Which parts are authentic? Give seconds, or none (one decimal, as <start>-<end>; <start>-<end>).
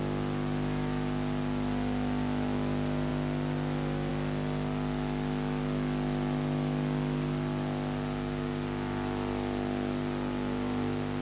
0.0-11.2